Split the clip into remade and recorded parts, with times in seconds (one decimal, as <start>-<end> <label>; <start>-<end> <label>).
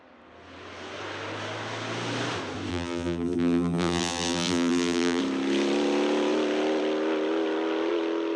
0.0-2.7 recorded; 2.7-5.2 remade; 5.2-8.4 recorded